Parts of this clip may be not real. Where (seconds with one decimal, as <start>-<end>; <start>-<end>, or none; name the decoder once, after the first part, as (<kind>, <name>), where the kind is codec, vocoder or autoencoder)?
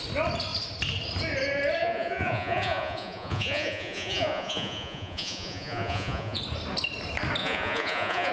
1.8-6.4 (vocoder, Vocos); 7.4-8.3